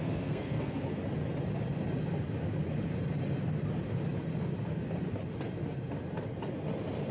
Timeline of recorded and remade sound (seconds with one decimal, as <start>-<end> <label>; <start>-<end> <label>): 0.0-0.9 remade; 0.9-7.1 recorded